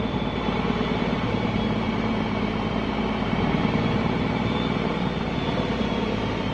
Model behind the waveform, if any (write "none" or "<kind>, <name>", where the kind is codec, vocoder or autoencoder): vocoder, BigVGAN v2